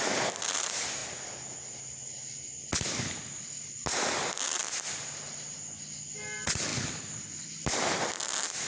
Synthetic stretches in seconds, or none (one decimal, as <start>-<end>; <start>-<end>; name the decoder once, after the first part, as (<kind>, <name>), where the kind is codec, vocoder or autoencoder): none